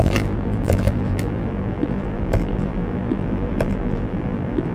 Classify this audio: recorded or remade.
remade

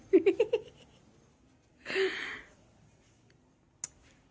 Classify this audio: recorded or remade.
recorded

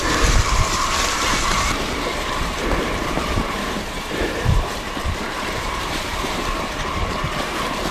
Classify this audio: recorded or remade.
remade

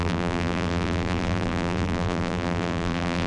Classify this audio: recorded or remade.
remade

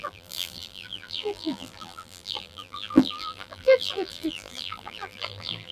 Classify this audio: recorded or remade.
remade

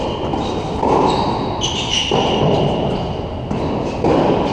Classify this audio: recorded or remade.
recorded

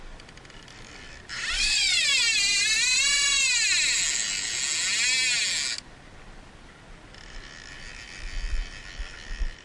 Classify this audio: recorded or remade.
recorded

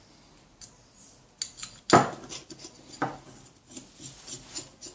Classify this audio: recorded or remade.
recorded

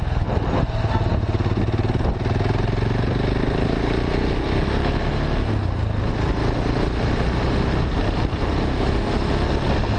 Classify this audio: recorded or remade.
recorded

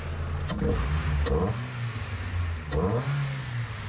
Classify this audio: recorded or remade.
recorded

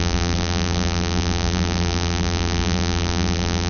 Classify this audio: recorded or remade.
remade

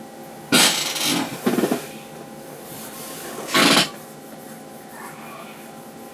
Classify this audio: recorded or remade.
recorded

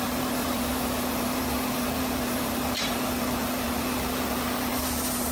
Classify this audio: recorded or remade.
remade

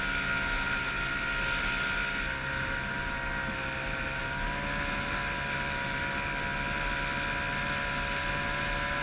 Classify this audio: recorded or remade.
recorded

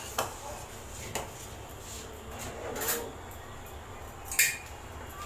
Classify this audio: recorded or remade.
recorded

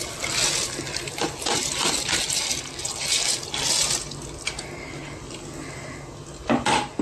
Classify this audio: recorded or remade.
recorded